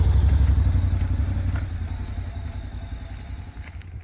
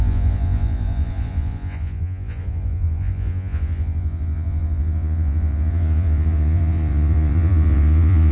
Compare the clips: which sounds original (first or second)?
first